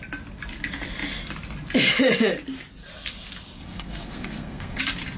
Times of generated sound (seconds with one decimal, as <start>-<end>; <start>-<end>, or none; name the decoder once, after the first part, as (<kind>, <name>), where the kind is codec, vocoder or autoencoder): 3.6-4.8 (codec, SNAC)